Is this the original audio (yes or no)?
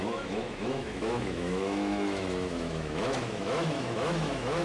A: no